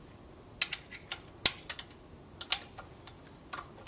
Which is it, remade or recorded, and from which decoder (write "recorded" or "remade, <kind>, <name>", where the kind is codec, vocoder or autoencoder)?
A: recorded